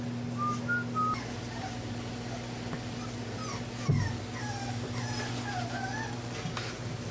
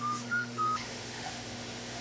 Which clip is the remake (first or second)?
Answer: second